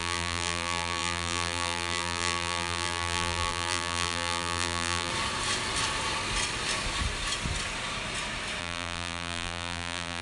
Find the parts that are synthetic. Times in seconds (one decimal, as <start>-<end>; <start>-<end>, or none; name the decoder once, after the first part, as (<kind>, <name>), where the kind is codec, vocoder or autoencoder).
0.0-5.1 (vocoder, BigVGAN v2); 8.6-10.2